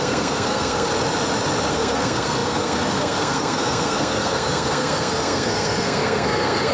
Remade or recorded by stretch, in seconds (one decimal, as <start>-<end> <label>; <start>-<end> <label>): 0.0-0.9 remade; 0.9-1.7 recorded; 1.7-6.7 remade